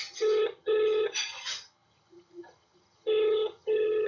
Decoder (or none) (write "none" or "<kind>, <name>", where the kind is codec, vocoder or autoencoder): vocoder, HiFi-GAN